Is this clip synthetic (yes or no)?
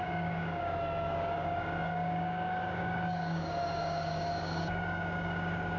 yes